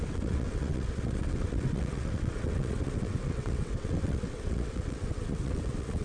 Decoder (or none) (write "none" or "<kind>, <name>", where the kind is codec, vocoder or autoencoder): vocoder, WaveNeXt